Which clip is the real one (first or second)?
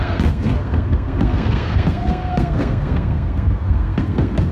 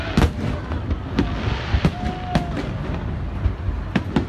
second